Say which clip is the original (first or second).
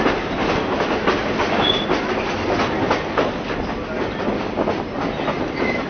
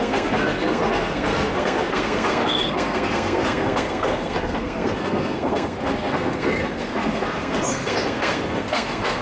first